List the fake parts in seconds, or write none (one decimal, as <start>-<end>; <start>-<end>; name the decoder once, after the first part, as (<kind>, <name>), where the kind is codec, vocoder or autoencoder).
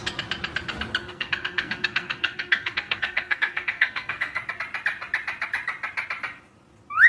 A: 1.0-4.4 (codec, SNAC)